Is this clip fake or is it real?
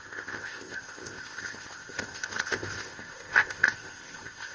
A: fake